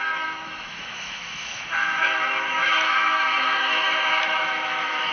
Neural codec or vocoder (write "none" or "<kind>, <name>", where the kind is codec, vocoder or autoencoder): autoencoder, DAC-VAE